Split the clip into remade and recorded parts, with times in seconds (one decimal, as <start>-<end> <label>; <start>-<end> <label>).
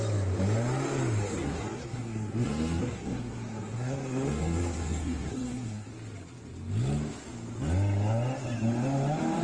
0.0-1.2 recorded; 1.2-5.9 remade; 5.9-9.4 recorded